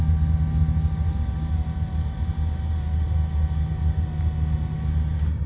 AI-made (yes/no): no